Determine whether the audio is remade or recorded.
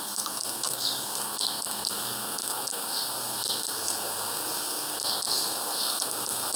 remade